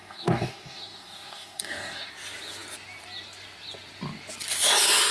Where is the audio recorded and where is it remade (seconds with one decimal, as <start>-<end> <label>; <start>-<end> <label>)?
0.0-2.1 remade; 2.1-5.1 recorded

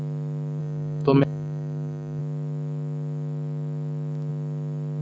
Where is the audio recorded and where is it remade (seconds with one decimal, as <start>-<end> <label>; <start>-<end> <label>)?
0.0-0.6 recorded; 0.6-2.2 remade; 2.2-5.0 recorded

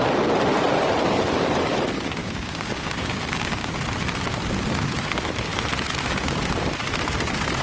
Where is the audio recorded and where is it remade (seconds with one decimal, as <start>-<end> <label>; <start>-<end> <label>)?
0.0-2.2 recorded; 2.2-3.7 remade; 3.7-7.6 recorded

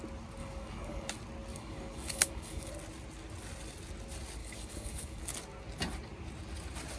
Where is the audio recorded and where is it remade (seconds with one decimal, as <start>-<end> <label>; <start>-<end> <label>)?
0.0-0.4 recorded; 0.4-1.1 remade; 1.1-1.5 recorded; 1.5-2.7 remade; 2.7-4.4 recorded; 4.4-5.2 remade; 5.2-7.0 recorded

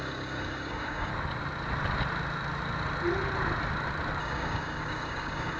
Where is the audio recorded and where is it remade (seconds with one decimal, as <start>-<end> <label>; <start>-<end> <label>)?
0.0-1.1 remade; 1.1-4.2 recorded; 4.2-5.6 remade

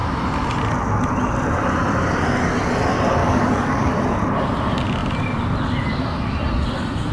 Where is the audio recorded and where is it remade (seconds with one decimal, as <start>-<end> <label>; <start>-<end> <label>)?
0.0-3.2 recorded; 3.2-3.9 remade; 3.9-7.1 recorded